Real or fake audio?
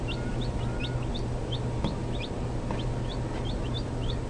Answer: real